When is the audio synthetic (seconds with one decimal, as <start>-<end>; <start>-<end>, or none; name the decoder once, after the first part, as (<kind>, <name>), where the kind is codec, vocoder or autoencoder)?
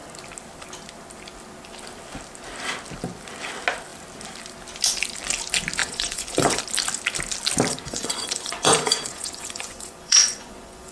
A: 5.8-6.6 (vocoder, Vocos); 7.7-10.9